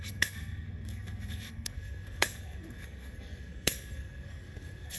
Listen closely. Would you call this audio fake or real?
fake